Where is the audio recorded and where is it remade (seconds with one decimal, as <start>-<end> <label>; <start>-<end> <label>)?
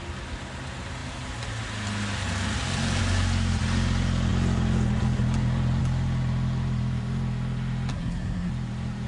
0.0-7.9 recorded; 7.9-8.5 remade; 8.5-9.1 recorded